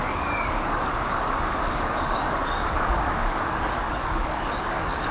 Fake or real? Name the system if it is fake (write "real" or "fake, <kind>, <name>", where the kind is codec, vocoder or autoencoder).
fake, codec, DAC